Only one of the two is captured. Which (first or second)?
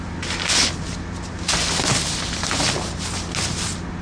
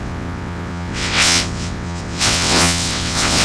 first